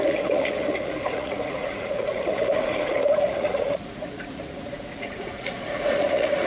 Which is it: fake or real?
fake